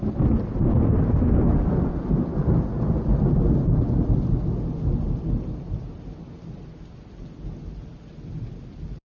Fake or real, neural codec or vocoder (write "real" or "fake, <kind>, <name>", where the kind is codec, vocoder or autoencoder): real